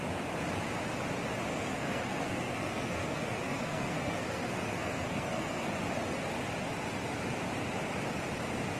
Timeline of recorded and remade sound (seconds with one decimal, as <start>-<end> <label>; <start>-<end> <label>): 0.0-1.5 recorded; 1.5-5.7 remade; 5.7-8.8 recorded